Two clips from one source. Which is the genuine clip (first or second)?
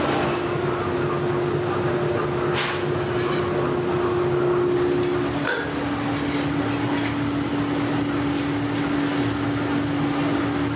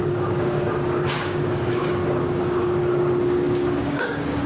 first